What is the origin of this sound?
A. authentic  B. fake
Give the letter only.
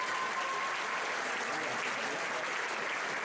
A